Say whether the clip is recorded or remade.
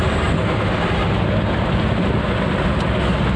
recorded